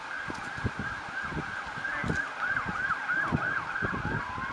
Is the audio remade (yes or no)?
no